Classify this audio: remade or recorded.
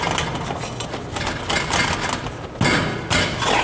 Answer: recorded